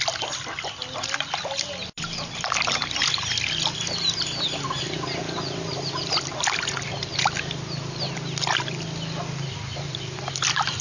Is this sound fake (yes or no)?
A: no